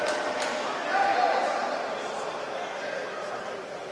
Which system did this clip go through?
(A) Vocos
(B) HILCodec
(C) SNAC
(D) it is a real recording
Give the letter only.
D